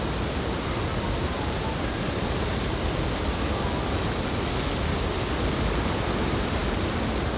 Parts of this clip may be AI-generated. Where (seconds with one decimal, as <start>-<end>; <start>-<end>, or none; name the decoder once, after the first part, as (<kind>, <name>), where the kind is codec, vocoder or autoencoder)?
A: none